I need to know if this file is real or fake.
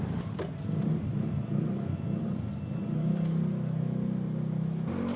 real